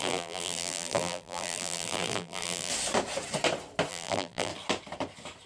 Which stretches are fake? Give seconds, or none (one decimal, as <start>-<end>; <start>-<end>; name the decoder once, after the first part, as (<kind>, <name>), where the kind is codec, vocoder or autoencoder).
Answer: 0.0-2.7 (vocoder, BigVGAN v2); 3.9-4.5